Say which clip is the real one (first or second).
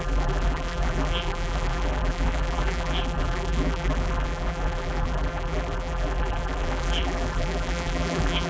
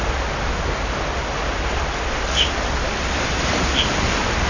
second